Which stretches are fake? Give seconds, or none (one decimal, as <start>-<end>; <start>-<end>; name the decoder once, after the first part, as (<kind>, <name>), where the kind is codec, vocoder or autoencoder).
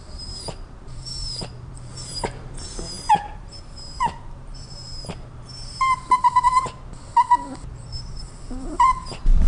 0.0-1.9 (vocoder, BigVGAN v2); 3.1-6.5; 7.7-9.5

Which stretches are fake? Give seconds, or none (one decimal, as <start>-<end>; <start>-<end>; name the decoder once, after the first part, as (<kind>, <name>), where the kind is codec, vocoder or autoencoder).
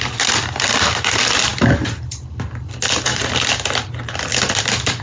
none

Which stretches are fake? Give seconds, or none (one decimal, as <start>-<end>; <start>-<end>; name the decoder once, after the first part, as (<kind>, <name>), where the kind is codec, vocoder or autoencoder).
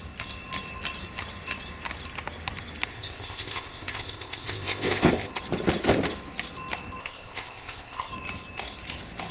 2.9-5.3 (codec, ZipCodec); 7.0-8.1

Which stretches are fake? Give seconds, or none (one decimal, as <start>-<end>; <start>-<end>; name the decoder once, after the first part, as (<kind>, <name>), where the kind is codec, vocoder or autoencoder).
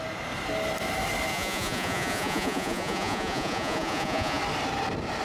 1.3-4.4 (vocoder, Vocos)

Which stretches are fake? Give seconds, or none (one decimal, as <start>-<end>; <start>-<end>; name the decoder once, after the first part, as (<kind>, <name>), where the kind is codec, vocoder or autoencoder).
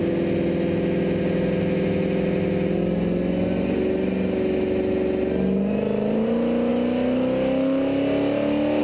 none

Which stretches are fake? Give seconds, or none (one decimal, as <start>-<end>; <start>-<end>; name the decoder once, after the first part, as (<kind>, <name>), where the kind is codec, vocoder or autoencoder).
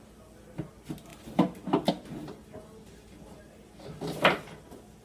1.1-1.9 (vocoder, BigVGAN v2)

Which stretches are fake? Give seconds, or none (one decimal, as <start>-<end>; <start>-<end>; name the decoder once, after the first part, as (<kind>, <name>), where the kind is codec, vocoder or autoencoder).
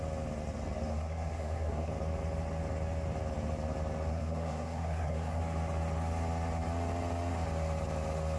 0.9-1.9 (codec, SNAC); 4.1-5.4